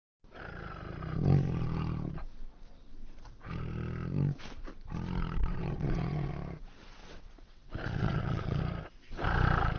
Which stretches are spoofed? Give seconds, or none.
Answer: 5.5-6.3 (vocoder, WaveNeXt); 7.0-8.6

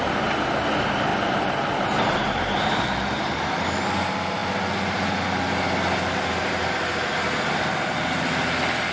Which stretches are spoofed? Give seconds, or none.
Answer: none

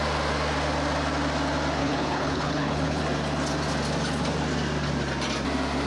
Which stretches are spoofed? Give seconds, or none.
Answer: 1.8-3.0 (codec, HILCodec)

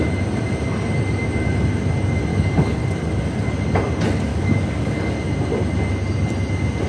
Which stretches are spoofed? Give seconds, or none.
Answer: 2.3-3.2 (codec, DAC); 4.3-5.1

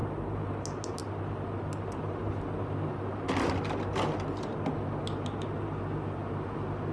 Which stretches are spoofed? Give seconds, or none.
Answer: none